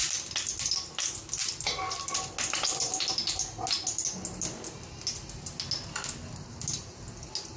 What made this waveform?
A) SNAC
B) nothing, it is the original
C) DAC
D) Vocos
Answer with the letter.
B